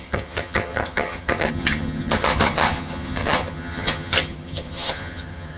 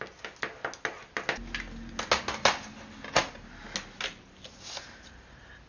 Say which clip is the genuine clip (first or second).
second